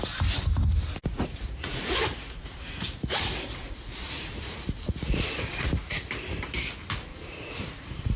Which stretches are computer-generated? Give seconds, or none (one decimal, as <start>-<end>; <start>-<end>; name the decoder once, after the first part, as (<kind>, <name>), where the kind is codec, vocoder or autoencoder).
1.1-6.0 (vocoder, Vocos); 7.1-8.2